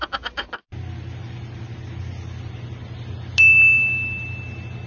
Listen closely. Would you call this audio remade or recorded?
recorded